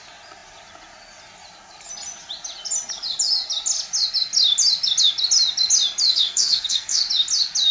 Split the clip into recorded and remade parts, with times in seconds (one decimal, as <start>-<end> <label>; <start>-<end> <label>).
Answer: 0.0-6.1 recorded; 6.1-7.0 remade; 7.0-7.7 recorded